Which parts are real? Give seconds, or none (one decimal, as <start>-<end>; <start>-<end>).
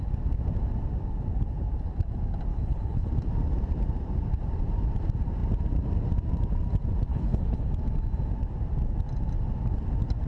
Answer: 0.0-2.5; 3.1-7.1; 7.7-10.3